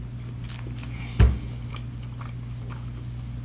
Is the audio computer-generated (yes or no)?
no